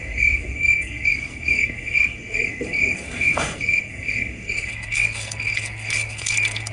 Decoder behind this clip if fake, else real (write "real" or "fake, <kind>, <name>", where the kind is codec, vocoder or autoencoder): fake, codec, SNAC